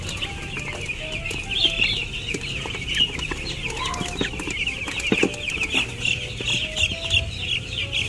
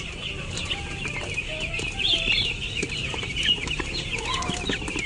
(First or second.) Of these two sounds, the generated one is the second